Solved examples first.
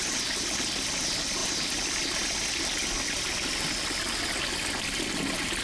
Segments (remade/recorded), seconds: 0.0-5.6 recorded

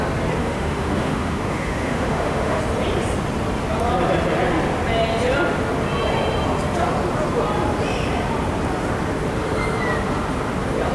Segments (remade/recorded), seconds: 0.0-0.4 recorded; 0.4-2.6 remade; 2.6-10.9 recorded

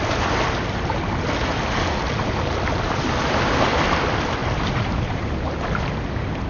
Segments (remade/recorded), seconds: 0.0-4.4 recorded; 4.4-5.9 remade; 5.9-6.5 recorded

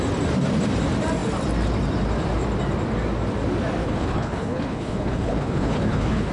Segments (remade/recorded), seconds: 0.0-3.8 recorded; 3.8-6.3 remade

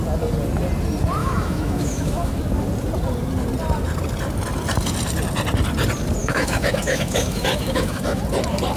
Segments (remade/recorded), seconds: 0.0-1.2 recorded; 1.2-2.3 remade; 2.3-6.2 recorded; 6.2-8.2 remade; 8.2-8.8 recorded